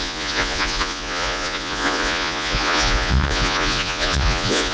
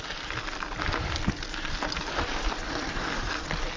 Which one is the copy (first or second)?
first